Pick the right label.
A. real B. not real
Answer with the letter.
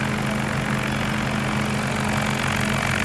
A